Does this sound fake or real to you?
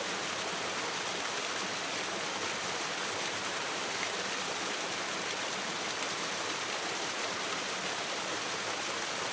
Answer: real